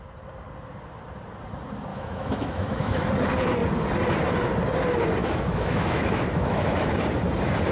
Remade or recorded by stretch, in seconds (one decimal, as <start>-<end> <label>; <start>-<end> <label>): 0.0-1.9 recorded; 1.9-3.1 remade; 3.1-5.2 recorded; 5.2-6.9 remade; 6.9-7.7 recorded